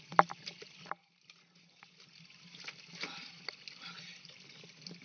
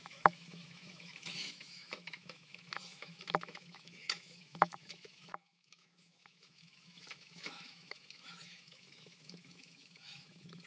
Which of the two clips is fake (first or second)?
second